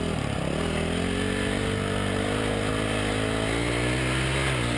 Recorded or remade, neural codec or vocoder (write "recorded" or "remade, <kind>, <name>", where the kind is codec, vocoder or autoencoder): recorded